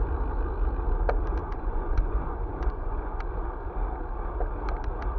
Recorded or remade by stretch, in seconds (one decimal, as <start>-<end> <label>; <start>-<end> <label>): 0.0-1.4 recorded; 1.4-3.2 remade; 3.2-5.2 recorded

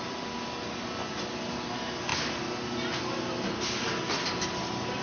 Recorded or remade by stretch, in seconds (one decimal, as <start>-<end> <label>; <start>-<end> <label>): 0.0-5.0 recorded

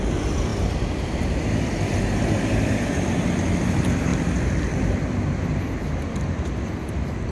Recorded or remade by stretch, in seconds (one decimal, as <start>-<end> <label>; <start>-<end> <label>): 0.0-7.3 remade

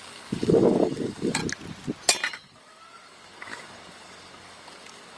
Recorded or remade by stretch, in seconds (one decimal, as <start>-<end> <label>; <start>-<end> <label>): 0.0-1.4 remade; 1.4-2.3 recorded; 2.3-5.2 remade

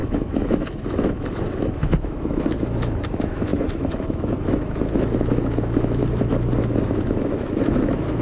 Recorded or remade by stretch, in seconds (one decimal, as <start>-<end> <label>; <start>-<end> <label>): 0.0-6.0 remade; 6.0-6.6 recorded; 6.6-8.2 remade

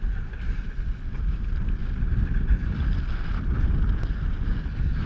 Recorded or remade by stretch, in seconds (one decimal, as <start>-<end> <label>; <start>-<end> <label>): 0.0-5.1 recorded

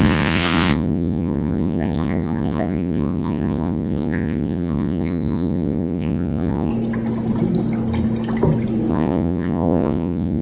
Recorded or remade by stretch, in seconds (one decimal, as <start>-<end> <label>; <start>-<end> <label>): 0.0-6.7 remade; 6.7-8.9 recorded; 8.9-10.4 remade